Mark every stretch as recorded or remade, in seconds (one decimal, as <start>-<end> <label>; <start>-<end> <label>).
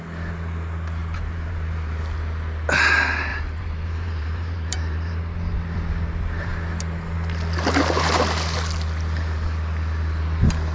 0.0-1.0 recorded; 1.0-2.0 remade; 2.0-3.3 recorded; 3.3-5.2 remade; 5.2-10.7 recorded